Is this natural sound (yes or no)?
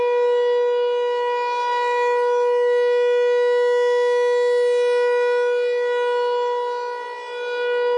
yes